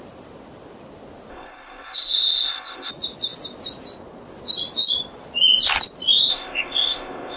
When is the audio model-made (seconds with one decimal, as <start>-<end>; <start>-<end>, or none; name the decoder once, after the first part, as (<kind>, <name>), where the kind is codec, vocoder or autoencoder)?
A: 1.3-2.9 (codec, ZipCodec); 6.3-7.4